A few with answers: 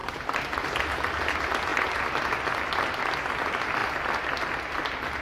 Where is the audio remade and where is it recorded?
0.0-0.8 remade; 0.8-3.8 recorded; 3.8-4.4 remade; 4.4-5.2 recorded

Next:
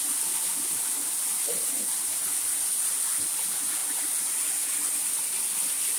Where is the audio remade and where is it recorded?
0.0-6.0 recorded

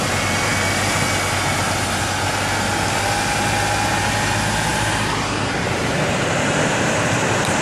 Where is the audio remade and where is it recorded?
0.0-4.7 recorded; 4.7-7.6 remade